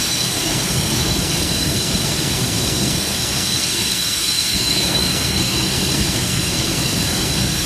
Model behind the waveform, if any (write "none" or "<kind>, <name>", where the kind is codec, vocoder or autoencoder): codec, SNAC